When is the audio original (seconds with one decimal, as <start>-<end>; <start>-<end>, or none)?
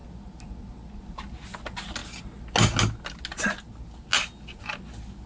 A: 0.0-5.3